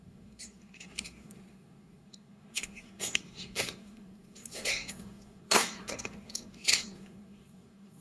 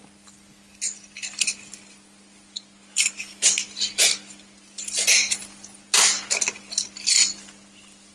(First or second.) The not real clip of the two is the first